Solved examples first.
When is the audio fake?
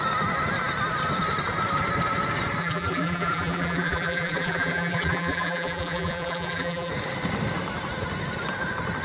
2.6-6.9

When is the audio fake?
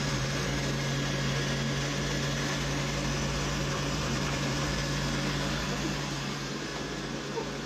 0.0-0.5; 3.7-4.8; 5.6-6.7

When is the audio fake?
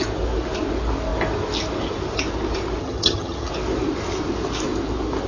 2.8-3.5